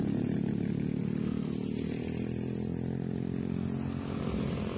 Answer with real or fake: real